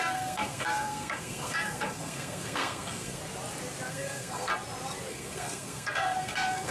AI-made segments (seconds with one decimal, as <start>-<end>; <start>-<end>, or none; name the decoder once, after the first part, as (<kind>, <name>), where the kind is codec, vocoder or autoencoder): 0.0-3.2 (codec, SNAC); 3.9-4.5; 5.1-6.7